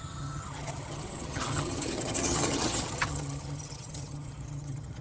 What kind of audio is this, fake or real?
fake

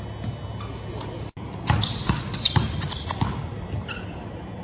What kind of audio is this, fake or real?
real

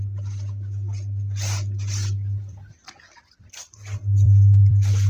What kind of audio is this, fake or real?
fake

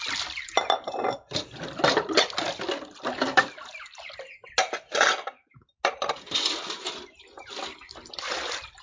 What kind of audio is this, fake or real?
real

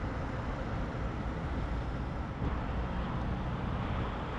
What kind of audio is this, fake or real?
real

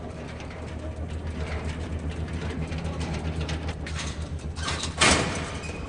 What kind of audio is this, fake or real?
fake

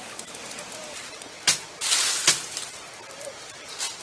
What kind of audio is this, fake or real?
real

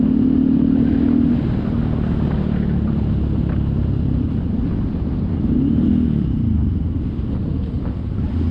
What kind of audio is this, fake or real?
real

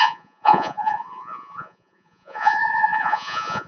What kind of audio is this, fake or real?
fake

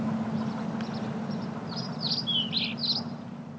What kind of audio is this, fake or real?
real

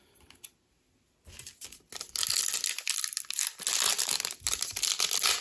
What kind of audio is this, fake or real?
real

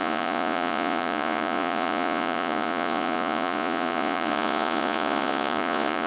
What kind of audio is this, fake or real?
fake